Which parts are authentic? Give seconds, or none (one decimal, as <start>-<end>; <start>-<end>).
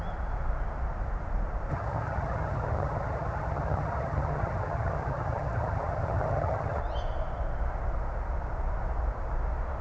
0.0-1.7; 6.8-9.8